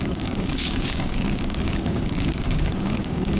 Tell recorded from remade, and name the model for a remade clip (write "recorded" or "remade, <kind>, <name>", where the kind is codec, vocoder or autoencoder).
remade, codec, DAC